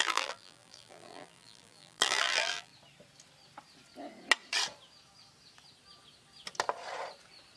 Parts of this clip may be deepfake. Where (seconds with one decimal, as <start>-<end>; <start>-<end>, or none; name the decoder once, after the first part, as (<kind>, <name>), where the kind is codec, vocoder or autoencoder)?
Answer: 0.0-2.7 (vocoder, BigVGAN v2)